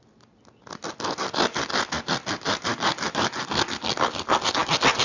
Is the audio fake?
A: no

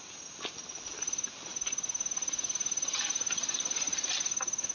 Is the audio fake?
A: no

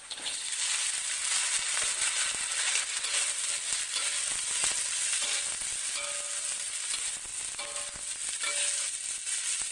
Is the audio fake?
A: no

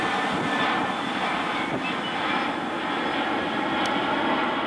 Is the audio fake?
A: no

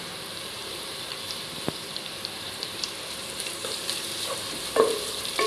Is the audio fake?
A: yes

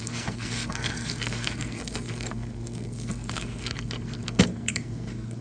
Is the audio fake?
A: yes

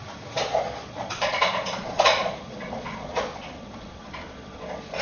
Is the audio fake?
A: yes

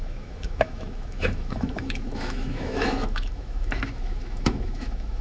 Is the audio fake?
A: yes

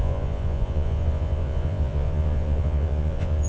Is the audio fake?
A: yes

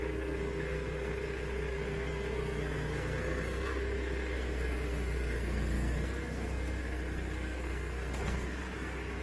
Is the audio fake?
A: yes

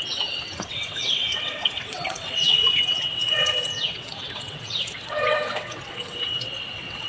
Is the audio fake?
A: yes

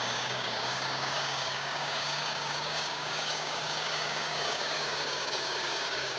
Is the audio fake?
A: yes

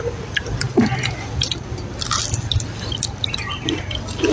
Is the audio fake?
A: no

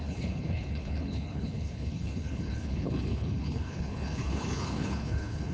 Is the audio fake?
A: yes